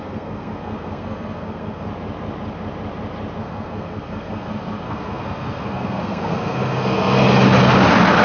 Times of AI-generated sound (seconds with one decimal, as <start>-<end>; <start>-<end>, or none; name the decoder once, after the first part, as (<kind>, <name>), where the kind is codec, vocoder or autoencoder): 0.0-1.9 (codec, SNAC); 3.4-7.2